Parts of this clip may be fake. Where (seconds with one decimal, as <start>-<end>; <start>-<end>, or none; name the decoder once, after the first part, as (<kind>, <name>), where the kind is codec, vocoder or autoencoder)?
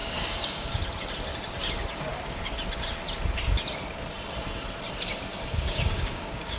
0.0-0.7 (codec, DAC); 5.3-6.6